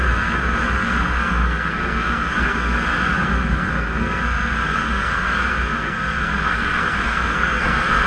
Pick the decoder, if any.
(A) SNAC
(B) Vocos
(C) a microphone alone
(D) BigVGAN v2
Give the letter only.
A